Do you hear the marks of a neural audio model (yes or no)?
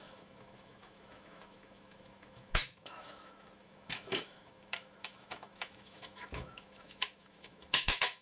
yes